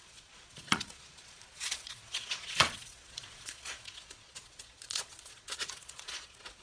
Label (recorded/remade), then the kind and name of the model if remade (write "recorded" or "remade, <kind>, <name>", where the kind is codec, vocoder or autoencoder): remade, vocoder, Vocos